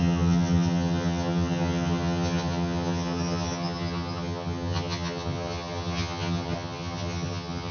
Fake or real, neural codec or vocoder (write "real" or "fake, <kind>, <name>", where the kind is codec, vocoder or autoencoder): fake, vocoder, HiFi-GAN